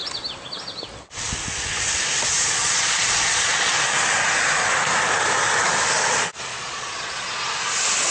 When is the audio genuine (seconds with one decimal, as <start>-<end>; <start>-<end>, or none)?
0.0-2.6; 3.7-6.5; 7.3-8.1